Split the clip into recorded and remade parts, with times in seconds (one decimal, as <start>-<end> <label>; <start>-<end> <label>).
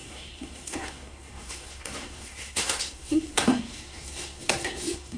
0.0-5.2 remade